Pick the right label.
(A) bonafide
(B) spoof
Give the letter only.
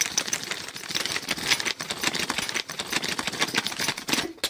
A